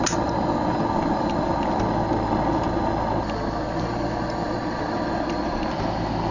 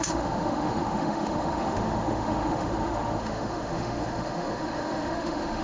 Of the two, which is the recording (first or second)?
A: first